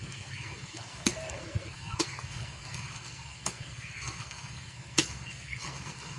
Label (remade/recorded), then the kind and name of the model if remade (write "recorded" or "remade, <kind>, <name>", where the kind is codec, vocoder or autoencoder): remade, codec, SNAC